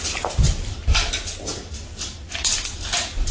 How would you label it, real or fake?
real